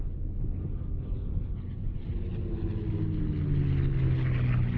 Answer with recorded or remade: recorded